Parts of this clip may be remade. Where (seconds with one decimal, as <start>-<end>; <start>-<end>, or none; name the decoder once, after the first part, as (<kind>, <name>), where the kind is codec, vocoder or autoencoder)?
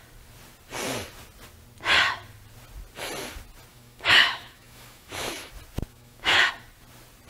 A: 3.7-5.5 (autoencoder, DAC-VAE); 5.9-6.5